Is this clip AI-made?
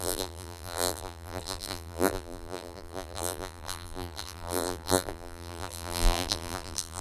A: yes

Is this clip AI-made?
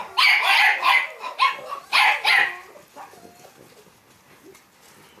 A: no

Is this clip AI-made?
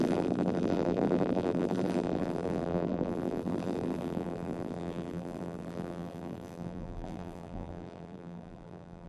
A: yes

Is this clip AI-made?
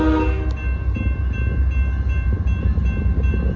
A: no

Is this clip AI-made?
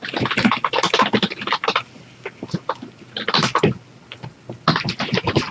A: no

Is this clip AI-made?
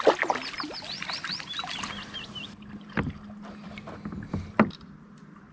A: no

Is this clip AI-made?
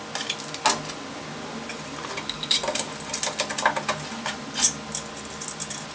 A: no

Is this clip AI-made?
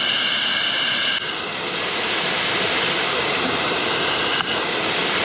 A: no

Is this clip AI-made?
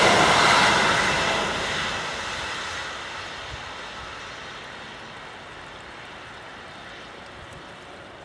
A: no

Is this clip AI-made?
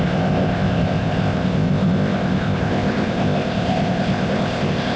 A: yes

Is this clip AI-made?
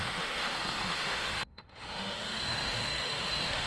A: yes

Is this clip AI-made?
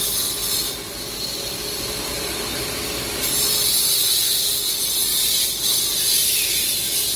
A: no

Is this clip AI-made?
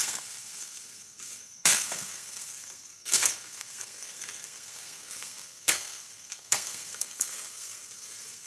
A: yes